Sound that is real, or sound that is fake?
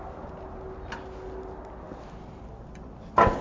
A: real